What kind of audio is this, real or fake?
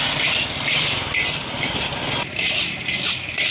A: real